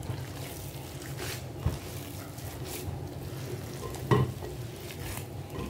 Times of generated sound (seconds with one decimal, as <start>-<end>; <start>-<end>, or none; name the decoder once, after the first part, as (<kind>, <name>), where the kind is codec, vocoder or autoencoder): none